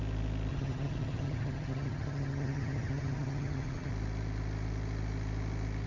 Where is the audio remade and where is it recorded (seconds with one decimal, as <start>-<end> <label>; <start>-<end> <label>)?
0.0-0.5 recorded; 0.5-3.9 remade; 3.9-5.9 recorded